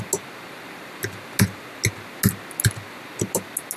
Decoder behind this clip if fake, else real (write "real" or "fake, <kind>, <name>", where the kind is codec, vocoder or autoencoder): real